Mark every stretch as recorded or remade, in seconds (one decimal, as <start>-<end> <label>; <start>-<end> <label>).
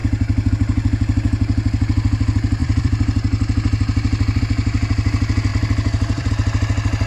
0.0-0.5 remade; 0.5-2.6 recorded; 2.6-4.4 remade; 4.4-5.5 recorded; 5.5-6.3 remade; 6.3-7.1 recorded